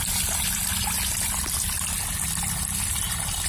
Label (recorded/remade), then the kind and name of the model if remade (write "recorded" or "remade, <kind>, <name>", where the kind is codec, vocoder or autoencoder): recorded